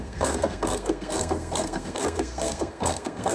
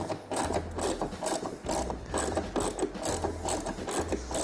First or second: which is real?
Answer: second